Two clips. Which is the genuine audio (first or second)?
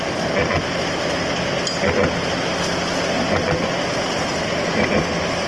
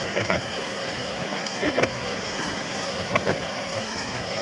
first